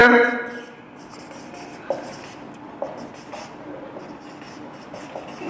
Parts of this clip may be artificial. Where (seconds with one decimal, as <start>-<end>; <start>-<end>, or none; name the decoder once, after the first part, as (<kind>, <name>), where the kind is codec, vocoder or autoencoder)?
none